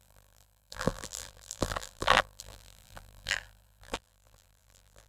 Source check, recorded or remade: remade